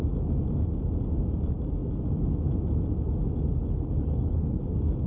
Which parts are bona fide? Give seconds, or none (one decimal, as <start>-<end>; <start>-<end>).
0.0-3.6; 4.6-5.1